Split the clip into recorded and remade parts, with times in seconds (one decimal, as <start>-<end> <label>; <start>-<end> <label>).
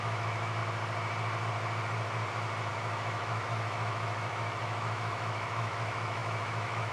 0.0-0.6 remade; 0.6-2.7 recorded; 2.7-6.9 remade